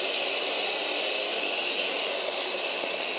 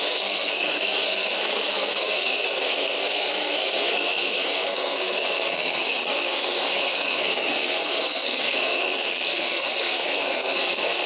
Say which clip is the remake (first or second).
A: second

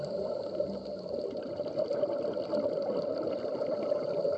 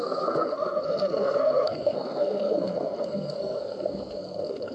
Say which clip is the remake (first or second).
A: second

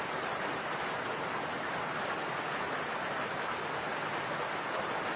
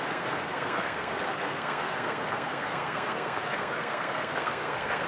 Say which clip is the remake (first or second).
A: second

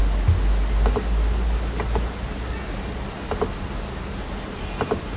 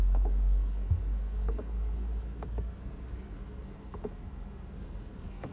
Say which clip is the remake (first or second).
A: second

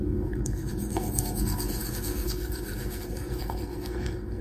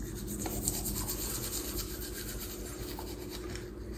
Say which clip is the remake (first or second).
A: first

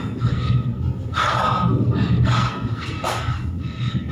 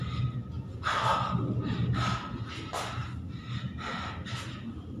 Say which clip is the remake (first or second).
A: first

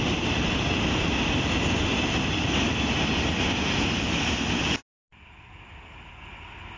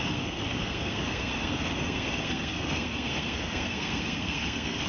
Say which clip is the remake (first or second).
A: second